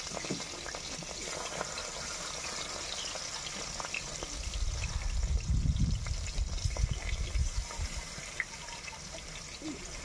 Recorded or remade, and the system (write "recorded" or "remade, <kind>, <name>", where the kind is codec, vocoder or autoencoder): recorded